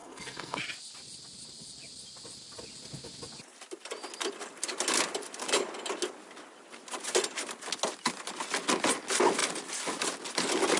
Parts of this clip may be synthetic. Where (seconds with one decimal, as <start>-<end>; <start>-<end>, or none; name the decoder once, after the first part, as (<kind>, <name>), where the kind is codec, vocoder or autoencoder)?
0.0-0.6 (codec, SNAC)

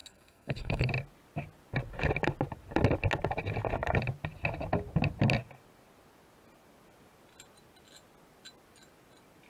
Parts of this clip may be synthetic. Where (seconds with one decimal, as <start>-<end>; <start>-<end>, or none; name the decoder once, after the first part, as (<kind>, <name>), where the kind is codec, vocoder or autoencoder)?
0.0-0.9 (codec, SNAC)

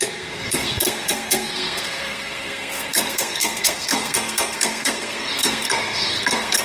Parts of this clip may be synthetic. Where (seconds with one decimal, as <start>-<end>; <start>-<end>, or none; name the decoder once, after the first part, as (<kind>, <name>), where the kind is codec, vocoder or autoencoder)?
0.0-6.6 (codec, SNAC)

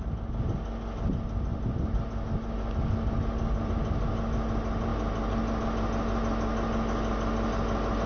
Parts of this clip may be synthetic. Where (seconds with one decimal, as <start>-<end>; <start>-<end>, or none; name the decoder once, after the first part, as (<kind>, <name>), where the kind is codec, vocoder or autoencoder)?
none

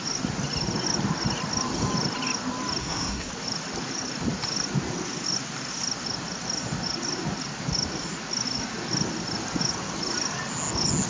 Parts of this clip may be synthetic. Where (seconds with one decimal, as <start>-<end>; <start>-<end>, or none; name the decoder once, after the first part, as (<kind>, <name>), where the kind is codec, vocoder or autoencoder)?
2.8-3.3 (codec, SNAC)

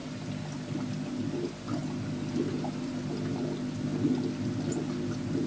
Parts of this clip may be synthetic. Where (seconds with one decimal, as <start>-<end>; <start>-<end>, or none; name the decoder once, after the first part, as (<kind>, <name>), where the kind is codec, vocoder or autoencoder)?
none

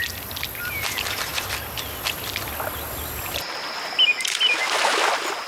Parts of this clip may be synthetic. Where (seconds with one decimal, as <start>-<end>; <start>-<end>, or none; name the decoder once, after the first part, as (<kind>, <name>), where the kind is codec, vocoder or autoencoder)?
none